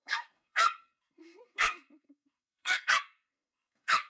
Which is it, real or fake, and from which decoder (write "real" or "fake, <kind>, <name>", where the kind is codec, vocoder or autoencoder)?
fake, codec, SNAC